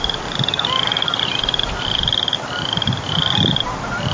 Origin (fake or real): real